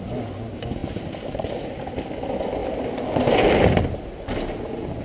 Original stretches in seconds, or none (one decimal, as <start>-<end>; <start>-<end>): 0.0-0.8; 1.8-2.6; 4.2-5.0